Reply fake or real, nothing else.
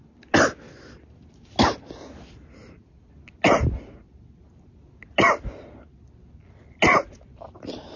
real